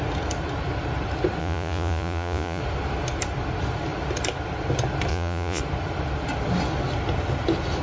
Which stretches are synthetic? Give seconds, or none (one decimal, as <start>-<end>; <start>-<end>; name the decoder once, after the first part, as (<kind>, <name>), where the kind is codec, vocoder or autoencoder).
1.4-2.6 (vocoder, Vocos); 5.1-5.6